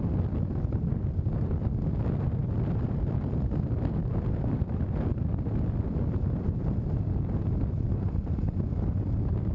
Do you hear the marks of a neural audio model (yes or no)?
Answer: no